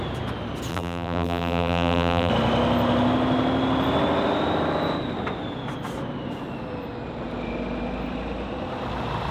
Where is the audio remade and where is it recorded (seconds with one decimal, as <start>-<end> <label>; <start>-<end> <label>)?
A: 0.0-0.7 recorded; 0.7-2.3 remade; 2.3-9.3 recorded